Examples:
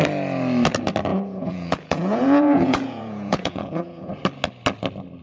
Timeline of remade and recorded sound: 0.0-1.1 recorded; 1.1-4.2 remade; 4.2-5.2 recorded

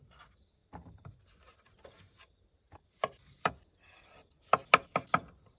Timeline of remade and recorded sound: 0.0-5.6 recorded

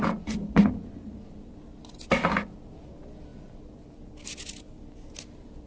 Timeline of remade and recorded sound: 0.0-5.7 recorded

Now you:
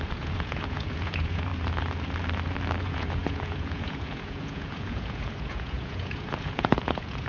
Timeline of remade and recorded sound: 0.0-1.5 remade; 1.5-2.8 recorded; 2.8-7.3 remade

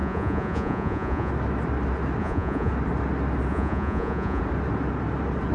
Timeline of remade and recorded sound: 0.0-1.3 remade; 1.3-2.2 recorded; 2.2-2.7 remade; 2.7-3.5 recorded; 3.5-4.4 remade; 4.4-5.5 recorded

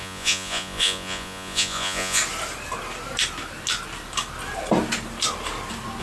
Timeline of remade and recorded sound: 0.0-2.2 remade; 2.2-6.0 recorded

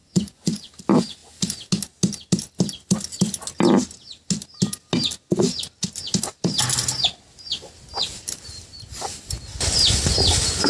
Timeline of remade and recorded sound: 0.0-0.7 remade; 0.7-10.7 recorded

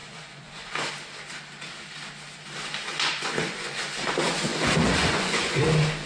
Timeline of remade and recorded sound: 0.0-0.9 remade; 0.9-2.9 recorded; 2.9-3.8 remade; 3.8-4.5 recorded; 4.5-5.6 remade; 5.6-6.1 recorded